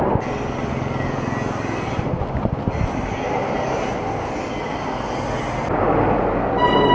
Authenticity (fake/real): real